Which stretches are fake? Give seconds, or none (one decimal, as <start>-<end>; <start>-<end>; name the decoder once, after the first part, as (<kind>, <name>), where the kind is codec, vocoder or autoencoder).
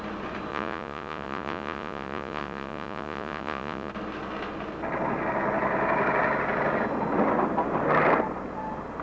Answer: 0.5-3.9 (vocoder, Vocos)